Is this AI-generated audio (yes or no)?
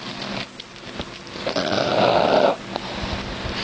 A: no